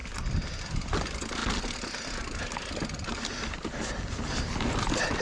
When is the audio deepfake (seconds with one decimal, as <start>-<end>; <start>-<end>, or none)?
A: none